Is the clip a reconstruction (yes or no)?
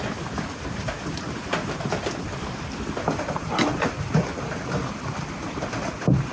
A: no